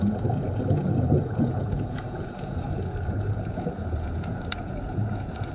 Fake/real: fake